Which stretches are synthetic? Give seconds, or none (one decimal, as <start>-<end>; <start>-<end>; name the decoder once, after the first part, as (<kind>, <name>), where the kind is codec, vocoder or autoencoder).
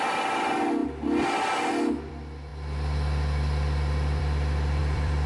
4.8-5.3 (vocoder, BigVGAN v2)